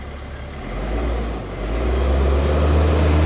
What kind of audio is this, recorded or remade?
recorded